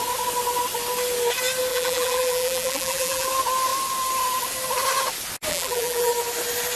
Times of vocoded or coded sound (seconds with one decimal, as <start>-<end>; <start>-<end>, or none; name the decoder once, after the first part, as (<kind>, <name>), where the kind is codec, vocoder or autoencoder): 1.7-3.3 (vocoder, BigVGAN v2); 5.5-6.1